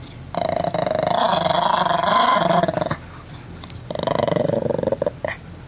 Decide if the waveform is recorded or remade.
recorded